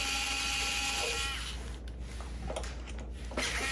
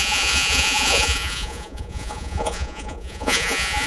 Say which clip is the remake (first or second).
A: second